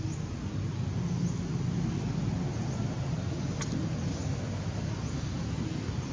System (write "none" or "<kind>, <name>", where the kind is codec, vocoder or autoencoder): none